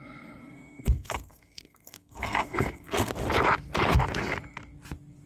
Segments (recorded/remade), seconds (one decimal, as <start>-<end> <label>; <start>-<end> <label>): 0.0-0.4 recorded; 0.4-3.1 remade; 3.1-5.3 recorded